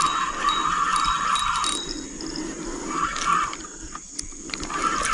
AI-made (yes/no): no